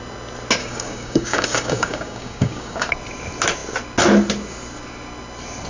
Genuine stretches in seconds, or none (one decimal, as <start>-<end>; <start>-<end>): 0.0-0.6; 2.9-5.7